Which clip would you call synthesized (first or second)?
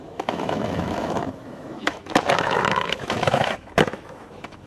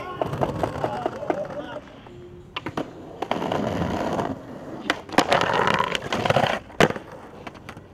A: first